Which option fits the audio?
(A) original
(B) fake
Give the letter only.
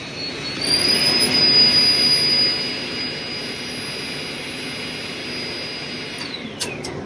A